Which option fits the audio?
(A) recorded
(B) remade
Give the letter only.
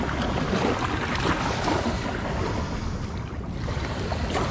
A